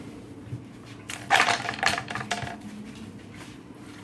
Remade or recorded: remade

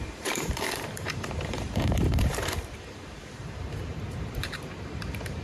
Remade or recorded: remade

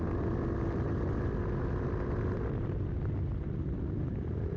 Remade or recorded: recorded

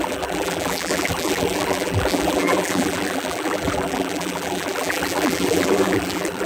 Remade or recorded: remade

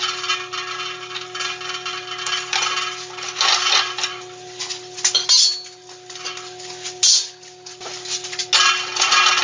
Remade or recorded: recorded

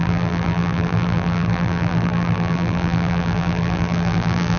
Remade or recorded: remade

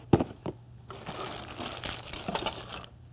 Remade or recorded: recorded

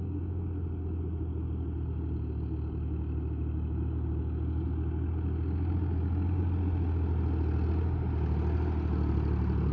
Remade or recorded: recorded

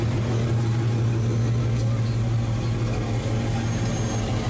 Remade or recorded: recorded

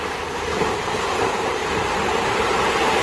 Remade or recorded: remade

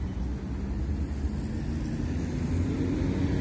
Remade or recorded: recorded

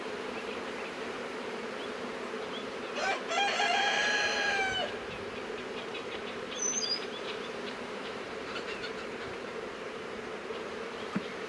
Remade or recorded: remade